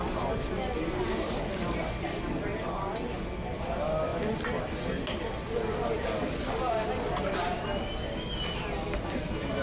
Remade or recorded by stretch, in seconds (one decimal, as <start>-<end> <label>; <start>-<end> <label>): 0.0-9.6 recorded